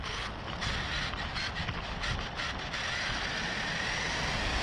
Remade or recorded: recorded